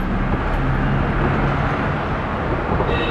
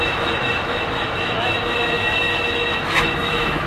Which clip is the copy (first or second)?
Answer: second